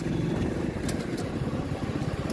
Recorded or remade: recorded